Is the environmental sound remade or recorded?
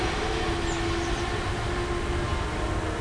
recorded